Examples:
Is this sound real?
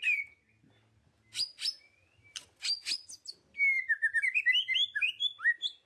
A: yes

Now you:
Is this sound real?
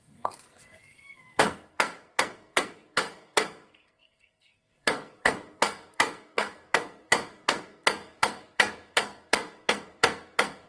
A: no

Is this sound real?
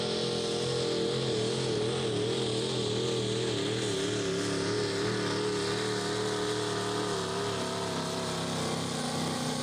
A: yes